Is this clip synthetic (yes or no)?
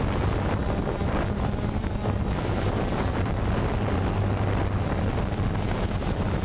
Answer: no